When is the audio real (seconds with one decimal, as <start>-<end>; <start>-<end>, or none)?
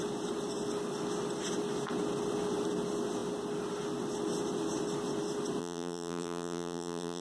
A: 0.0-5.6